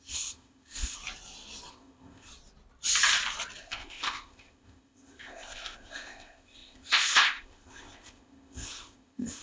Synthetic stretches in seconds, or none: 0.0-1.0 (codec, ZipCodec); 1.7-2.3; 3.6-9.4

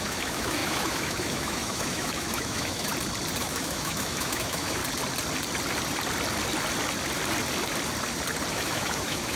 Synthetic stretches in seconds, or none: 0.0-2.9 (autoencoder, DAC-VAE); 3.4-4.8; 8.5-9.4